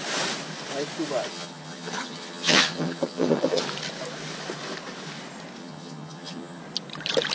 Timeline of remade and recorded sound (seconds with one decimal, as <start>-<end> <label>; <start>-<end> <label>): 0.0-1.3 recorded; 1.3-3.6 remade; 3.6-5.6 recorded; 5.6-6.6 remade; 6.6-7.3 recorded